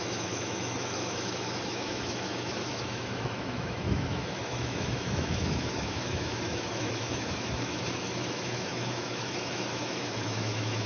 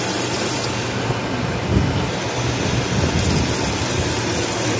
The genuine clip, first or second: second